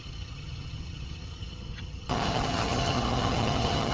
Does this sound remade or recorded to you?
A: remade